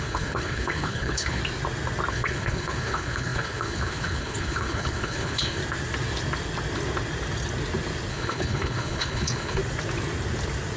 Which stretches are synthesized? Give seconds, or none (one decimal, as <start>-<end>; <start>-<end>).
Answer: 0.0-1.4; 2.1-5.6; 8.1-9.6